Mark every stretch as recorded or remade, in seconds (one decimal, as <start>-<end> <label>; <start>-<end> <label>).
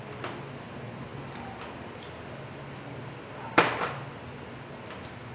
0.0-5.3 recorded